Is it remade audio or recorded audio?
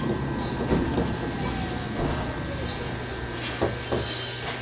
recorded